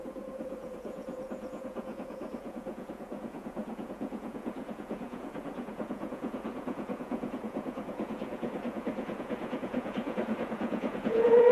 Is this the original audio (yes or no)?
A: no